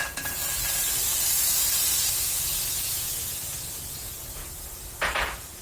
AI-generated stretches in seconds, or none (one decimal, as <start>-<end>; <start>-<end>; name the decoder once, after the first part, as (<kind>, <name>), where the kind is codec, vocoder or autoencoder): 0.0-0.4 (vocoder, Vocos); 2.0-5.6